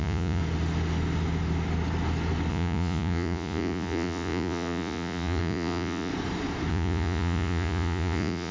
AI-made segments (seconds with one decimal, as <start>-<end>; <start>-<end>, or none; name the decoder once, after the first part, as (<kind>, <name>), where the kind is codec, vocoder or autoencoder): 0.0-0.4 (vocoder, Vocos); 2.5-6.1; 6.7-8.5